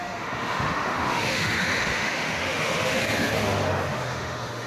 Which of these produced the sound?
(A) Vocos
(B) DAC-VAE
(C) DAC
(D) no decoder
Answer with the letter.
B